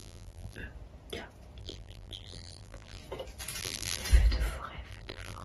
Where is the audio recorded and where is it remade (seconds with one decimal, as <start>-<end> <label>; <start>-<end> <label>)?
0.0-0.6 remade; 0.6-1.6 recorded; 1.6-3.0 remade; 3.0-3.6 recorded; 3.6-4.0 remade; 4.0-4.9 recorded; 4.9-5.4 remade